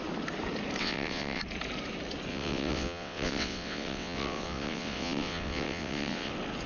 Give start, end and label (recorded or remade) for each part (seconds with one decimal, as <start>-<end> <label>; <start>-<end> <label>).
0.0-0.8 recorded; 0.8-1.4 remade; 1.4-2.3 recorded; 2.3-6.3 remade; 6.3-6.7 recorded